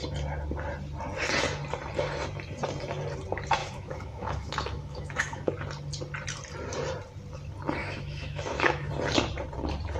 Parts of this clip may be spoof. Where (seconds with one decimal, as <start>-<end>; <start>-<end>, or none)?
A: 3.6-5.5; 7.8-8.9